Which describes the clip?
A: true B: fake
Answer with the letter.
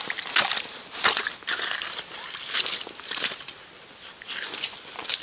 A